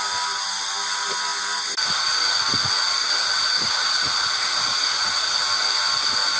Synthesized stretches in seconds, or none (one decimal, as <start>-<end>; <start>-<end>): 3.0-5.4